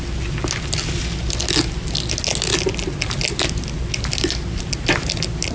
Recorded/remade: recorded